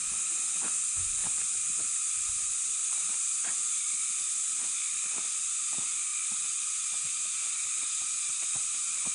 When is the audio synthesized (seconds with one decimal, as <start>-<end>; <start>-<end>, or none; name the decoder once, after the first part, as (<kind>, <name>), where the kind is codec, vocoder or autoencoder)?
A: none